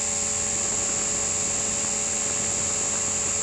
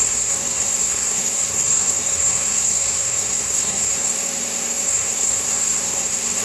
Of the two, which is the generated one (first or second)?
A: second